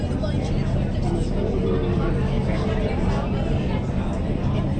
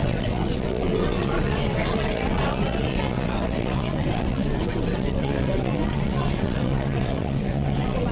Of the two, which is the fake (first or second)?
second